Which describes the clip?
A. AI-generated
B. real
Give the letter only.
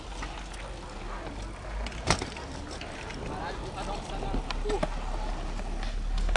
B